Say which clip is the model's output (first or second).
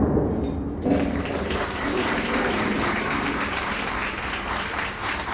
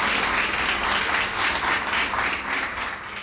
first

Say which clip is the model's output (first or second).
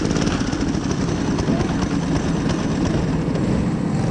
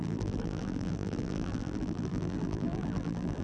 second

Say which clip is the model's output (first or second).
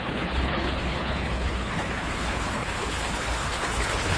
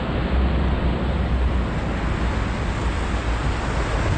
first